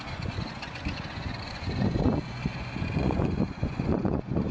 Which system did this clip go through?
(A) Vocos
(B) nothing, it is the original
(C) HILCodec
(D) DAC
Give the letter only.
A